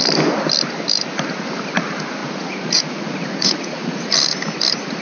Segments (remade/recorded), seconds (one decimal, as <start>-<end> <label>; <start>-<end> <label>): 0.0-2.2 recorded; 2.2-4.0 remade; 4.0-5.0 recorded